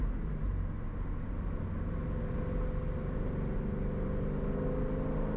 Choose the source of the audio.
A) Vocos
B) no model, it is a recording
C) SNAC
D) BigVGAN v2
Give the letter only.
B